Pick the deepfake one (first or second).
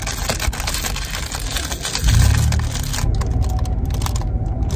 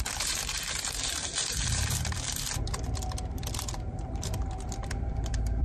second